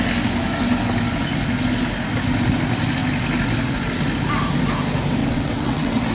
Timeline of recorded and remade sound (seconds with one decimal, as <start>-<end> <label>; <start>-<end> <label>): 0.0-5.2 recorded; 5.2-6.1 remade